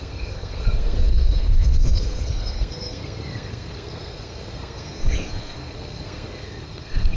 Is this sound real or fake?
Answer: fake